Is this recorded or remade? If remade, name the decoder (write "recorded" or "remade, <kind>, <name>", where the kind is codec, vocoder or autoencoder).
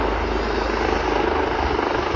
recorded